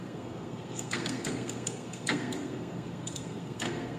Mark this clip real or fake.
fake